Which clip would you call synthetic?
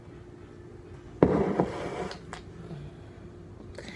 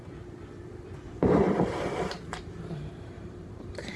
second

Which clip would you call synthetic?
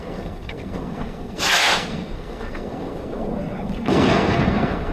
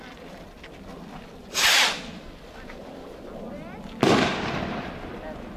first